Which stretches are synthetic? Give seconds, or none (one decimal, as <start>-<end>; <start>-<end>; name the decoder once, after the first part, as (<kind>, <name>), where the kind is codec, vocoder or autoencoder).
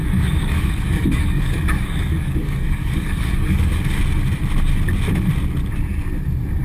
0.0-4.0 (codec, DAC)